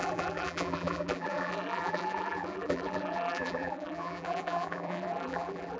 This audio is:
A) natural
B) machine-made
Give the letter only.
B